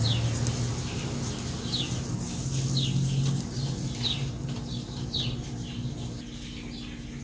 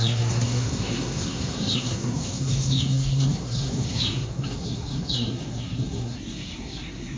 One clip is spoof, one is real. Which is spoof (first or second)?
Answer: second